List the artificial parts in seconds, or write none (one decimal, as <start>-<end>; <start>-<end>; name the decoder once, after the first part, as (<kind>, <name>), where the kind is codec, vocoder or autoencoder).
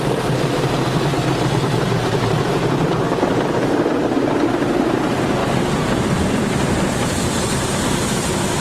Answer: 0.0-8.6 (vocoder, BigVGAN v2)